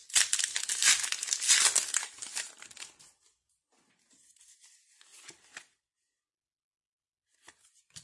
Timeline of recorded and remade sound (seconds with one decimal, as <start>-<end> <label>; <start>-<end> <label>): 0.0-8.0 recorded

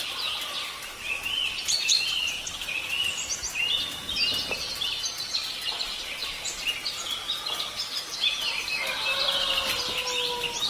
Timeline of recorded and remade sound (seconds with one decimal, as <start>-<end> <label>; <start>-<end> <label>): 0.0-10.7 recorded

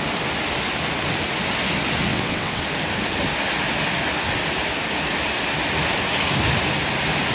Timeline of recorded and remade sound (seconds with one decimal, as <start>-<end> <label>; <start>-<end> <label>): 0.0-2.1 recorded; 2.1-2.6 remade; 2.6-7.3 recorded

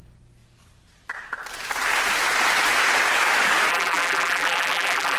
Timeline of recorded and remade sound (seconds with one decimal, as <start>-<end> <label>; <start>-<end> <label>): 0.0-3.7 recorded; 3.7-5.2 remade

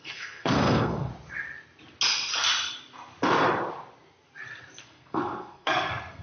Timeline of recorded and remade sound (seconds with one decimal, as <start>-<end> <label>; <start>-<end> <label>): 0.0-1.1 remade; 1.1-4.8 recorded; 4.8-6.2 remade

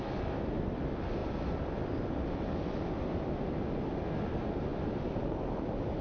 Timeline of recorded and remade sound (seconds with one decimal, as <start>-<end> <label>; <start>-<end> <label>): 0.0-6.0 recorded